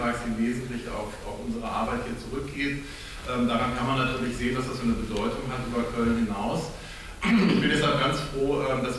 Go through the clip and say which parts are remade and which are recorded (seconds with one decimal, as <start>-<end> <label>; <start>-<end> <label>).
0.0-9.0 recorded